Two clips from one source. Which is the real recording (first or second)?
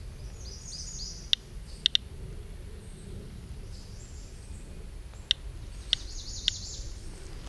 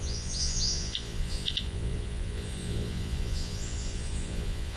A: first